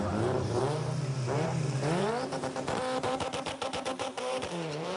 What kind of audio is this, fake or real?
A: fake